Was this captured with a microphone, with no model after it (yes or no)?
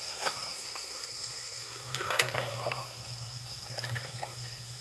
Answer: no